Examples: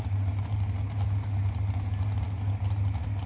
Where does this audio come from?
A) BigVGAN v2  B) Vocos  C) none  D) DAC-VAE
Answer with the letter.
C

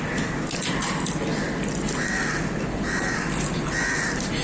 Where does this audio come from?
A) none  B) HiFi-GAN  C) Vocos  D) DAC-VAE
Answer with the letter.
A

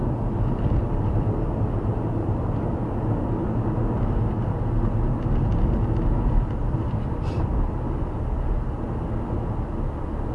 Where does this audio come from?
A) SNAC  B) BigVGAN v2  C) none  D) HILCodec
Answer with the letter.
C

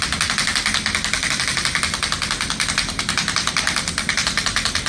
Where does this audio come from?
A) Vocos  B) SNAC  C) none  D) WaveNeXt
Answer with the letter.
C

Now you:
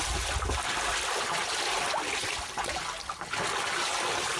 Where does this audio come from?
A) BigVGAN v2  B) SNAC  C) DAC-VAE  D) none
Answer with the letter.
D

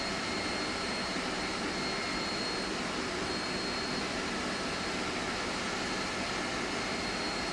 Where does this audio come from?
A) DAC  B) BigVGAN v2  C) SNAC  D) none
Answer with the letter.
D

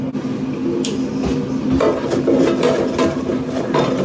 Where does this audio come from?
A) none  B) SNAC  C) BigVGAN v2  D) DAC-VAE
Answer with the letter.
A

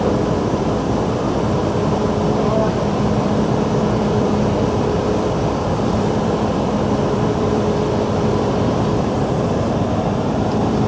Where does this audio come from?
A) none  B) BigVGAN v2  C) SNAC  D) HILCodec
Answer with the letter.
B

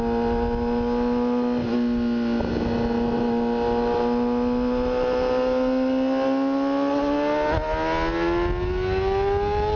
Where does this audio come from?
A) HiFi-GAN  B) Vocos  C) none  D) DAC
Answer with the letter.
C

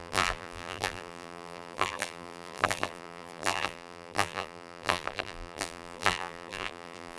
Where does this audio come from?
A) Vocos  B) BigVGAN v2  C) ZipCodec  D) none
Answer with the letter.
B